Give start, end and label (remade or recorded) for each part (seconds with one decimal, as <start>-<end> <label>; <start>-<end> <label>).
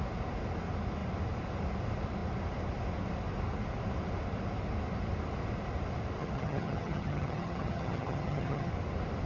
0.0-6.2 recorded; 6.2-8.7 remade; 8.7-9.3 recorded